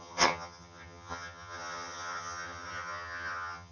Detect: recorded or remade remade